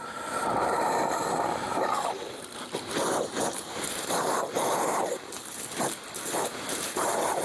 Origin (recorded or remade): remade